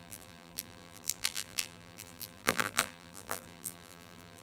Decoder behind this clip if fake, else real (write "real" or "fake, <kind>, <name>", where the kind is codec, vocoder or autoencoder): fake, vocoder, BigVGAN v2